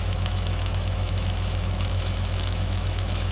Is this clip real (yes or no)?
no